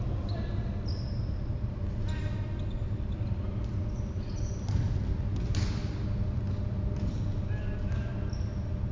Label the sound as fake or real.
real